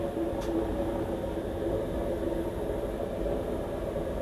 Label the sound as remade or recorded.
recorded